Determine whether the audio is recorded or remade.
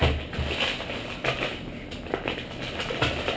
recorded